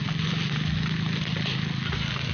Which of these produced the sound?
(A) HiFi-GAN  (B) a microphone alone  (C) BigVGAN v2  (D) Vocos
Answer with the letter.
B